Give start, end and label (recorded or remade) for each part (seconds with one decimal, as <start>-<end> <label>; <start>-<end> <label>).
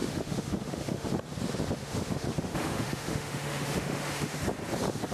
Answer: 0.0-1.1 remade; 1.1-1.8 recorded; 1.8-4.4 remade; 4.4-5.1 recorded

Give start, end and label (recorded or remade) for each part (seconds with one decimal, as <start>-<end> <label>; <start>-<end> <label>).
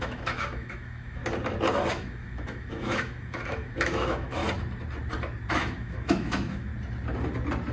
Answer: 0.0-1.2 remade; 1.2-1.9 recorded; 1.9-4.4 remade; 4.4-5.5 recorded; 5.5-6.7 remade; 6.7-7.7 recorded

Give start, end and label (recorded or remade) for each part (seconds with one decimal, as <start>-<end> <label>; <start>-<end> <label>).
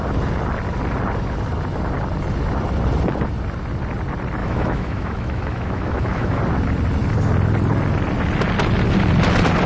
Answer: 0.0-4.4 recorded; 4.4-6.4 remade; 6.4-9.7 recorded